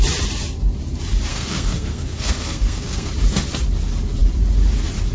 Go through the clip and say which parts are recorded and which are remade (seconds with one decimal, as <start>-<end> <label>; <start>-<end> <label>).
0.0-1.3 recorded; 1.3-3.1 remade; 3.1-5.1 recorded